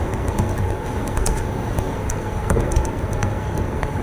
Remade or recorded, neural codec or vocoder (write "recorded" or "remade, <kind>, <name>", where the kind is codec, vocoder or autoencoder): remade, codec, SNAC